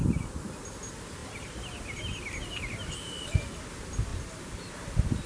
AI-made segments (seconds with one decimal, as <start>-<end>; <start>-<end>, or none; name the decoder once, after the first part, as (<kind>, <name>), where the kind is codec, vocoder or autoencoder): none